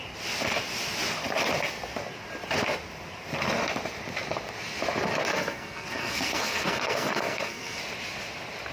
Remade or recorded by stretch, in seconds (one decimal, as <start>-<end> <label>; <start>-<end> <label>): 0.0-5.3 recorded; 5.3-7.8 remade; 7.8-8.7 recorded